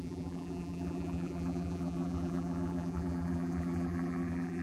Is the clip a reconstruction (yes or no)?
yes